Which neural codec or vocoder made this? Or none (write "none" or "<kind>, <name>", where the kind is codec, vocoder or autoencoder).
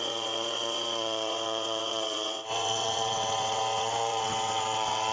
vocoder, WaveNeXt